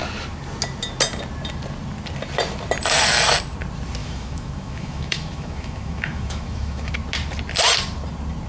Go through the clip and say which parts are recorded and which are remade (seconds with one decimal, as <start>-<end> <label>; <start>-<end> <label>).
0.0-4.0 recorded; 4.0-6.9 remade; 6.9-8.5 recorded